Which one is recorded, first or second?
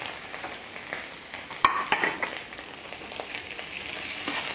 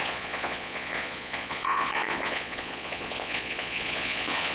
first